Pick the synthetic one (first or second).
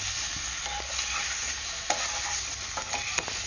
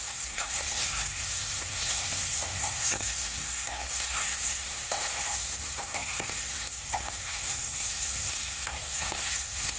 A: second